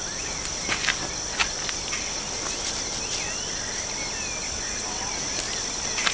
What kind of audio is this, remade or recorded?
recorded